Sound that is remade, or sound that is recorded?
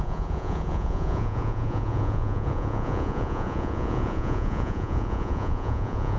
remade